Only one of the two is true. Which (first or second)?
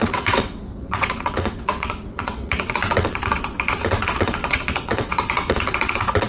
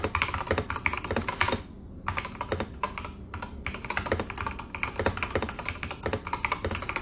second